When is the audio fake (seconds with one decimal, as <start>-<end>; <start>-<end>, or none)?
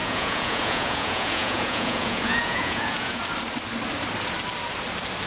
0.0-3.2